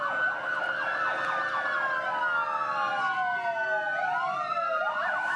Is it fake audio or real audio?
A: real